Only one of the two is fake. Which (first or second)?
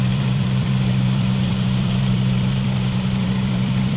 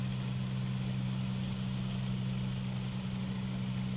first